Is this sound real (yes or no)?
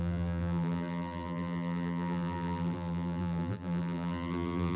no